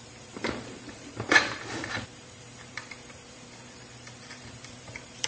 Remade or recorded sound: remade